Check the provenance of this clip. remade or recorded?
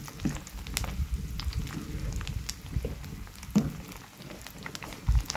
recorded